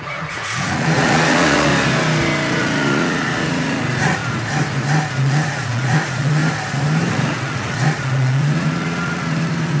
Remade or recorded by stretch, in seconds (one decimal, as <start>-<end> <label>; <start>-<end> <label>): 0.0-1.7 remade; 1.7-2.5 recorded; 2.5-4.2 remade; 4.2-5.2 recorded; 5.2-6.4 remade; 6.4-7.1 recorded; 7.1-9.8 remade